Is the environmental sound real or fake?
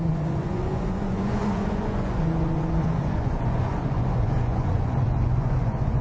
fake